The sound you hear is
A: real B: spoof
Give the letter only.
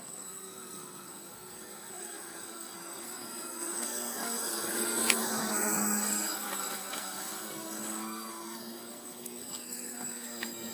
B